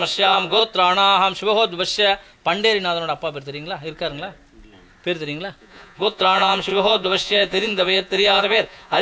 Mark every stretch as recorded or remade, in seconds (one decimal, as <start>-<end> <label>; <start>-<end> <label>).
0.0-0.6 remade; 0.6-5.6 recorded; 5.6-9.0 remade